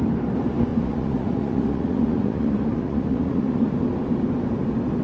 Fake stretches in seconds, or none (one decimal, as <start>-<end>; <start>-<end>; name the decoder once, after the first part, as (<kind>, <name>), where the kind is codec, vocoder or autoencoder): 0.7-3.7 (vocoder, Vocos)